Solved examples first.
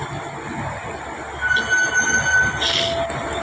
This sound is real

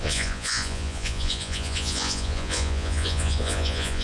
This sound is fake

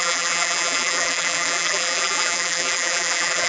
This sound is fake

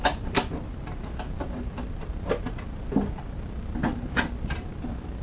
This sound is real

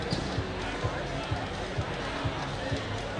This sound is real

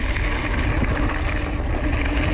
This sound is real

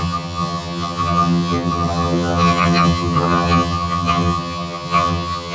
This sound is fake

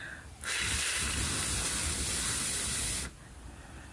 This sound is real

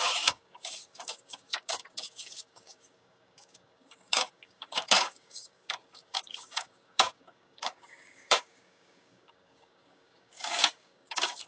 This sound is fake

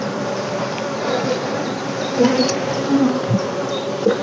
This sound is fake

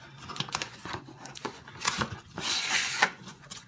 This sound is fake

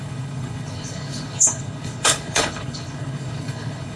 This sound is fake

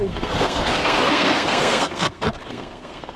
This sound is fake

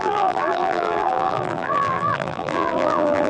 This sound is fake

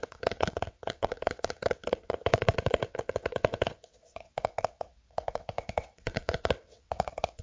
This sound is fake